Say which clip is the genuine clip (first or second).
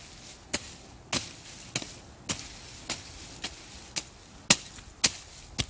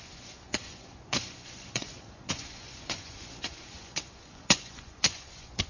first